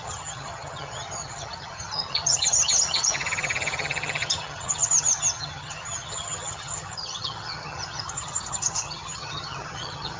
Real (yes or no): no